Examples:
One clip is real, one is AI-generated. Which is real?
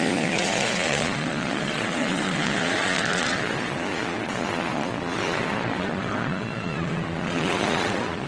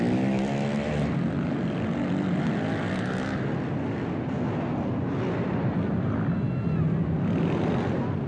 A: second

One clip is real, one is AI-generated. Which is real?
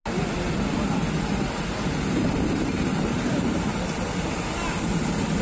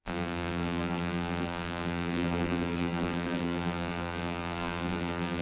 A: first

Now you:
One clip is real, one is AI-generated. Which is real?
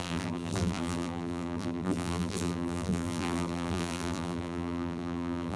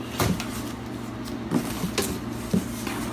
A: second